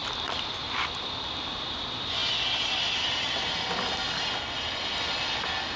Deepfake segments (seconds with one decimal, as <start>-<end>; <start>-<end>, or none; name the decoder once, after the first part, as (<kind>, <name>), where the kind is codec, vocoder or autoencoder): 0.0-2.2 (vocoder, BigVGAN v2)